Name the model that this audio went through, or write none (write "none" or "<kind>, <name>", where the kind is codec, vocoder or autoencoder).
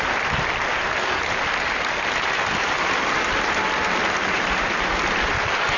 none